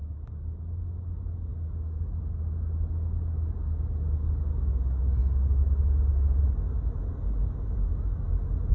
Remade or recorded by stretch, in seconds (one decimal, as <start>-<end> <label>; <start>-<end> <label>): 0.0-1.5 recorded; 1.5-2.2 remade; 2.2-8.7 recorded

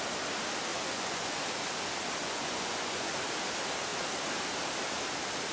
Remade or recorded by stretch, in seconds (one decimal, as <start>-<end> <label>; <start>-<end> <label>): 0.0-0.7 recorded; 0.7-1.5 remade; 1.5-2.2 recorded; 2.2-3.1 remade; 3.1-5.5 recorded

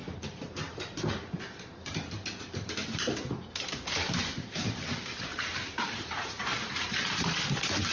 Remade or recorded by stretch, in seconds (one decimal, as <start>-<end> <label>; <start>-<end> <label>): 0.0-7.9 remade

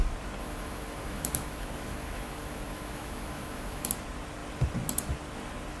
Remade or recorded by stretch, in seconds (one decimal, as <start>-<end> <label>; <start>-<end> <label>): 0.0-0.4 recorded; 0.4-3.9 remade; 3.9-5.8 recorded

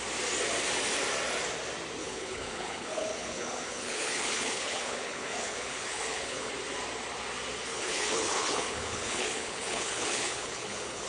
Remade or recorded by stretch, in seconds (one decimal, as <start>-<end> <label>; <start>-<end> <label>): 0.0-2.0 recorded; 2.0-6.5 remade; 6.5-7.7 recorded; 7.7-11.1 remade